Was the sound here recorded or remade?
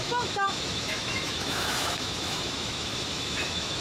remade